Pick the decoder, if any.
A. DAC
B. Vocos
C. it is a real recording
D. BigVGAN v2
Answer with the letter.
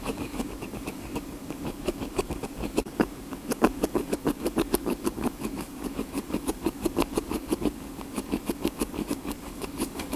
A